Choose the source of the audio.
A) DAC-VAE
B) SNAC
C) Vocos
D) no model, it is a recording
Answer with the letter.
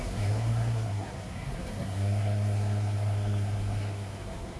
B